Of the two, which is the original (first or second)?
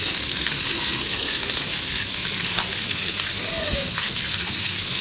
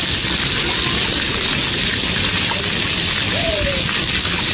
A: second